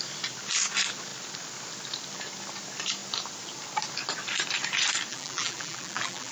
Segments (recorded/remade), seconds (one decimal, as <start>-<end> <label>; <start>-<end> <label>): 0.0-5.1 recorded; 5.1-6.3 remade

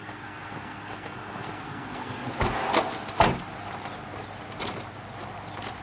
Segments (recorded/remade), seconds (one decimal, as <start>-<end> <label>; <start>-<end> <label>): 0.0-2.2 remade; 2.2-5.8 recorded

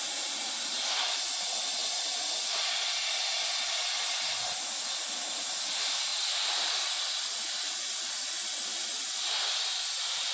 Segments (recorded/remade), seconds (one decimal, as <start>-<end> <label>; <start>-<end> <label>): 0.0-6.1 recorded; 6.1-7.0 remade; 7.0-10.3 recorded

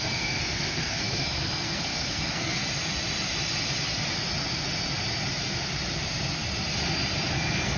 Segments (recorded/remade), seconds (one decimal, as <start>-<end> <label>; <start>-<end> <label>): 0.0-2.6 remade; 2.6-7.3 recorded; 7.3-7.8 remade

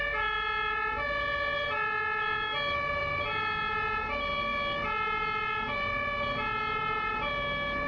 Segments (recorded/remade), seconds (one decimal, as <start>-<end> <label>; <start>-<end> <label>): 0.0-7.9 recorded